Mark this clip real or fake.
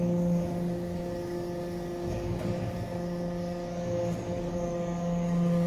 fake